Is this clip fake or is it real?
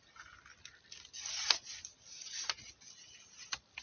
real